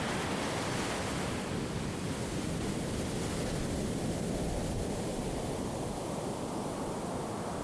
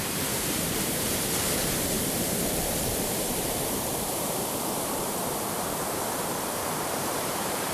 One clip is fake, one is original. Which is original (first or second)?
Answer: first